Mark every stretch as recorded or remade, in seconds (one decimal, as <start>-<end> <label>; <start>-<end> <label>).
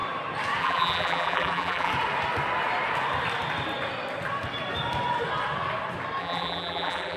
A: 0.0-0.6 recorded; 0.6-1.9 remade; 1.9-6.2 recorded; 6.2-7.2 remade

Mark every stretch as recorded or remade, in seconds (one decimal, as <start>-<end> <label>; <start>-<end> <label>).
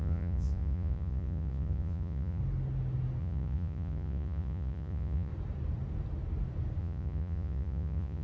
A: 0.0-2.4 remade; 2.4-3.2 recorded; 3.2-5.3 remade; 5.3-6.8 recorded; 6.8-8.2 remade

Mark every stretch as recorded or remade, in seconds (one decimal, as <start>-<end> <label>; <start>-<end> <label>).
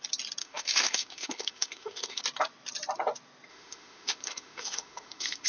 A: 0.0-0.4 recorded; 0.4-2.2 remade; 2.2-3.5 recorded; 3.5-5.5 remade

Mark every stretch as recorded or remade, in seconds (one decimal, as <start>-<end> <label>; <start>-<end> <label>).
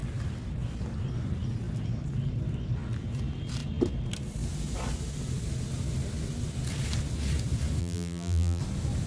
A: 0.0-7.8 recorded; 7.8-8.6 remade; 8.6-9.1 recorded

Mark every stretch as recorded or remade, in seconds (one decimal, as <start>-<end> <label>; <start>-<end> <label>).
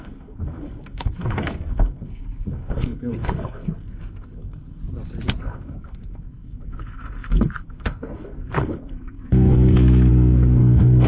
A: 0.0-4.8 remade; 4.8-5.4 recorded; 5.4-11.1 remade